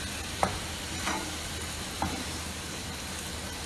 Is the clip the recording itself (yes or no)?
yes